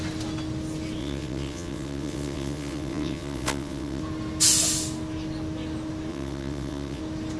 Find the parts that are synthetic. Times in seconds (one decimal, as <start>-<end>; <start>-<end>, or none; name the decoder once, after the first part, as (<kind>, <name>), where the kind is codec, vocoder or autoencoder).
1.0-4.0 (vocoder, WaveNeXt); 6.1-7.0